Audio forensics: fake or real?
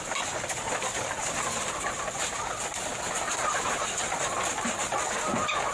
real